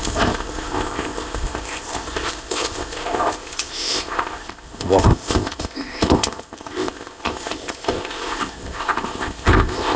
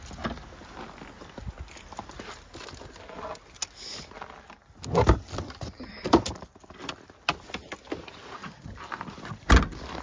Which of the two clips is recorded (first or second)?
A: second